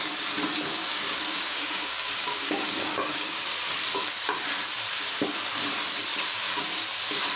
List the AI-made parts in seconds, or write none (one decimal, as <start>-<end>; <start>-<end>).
0.8-3.6; 6.1-6.6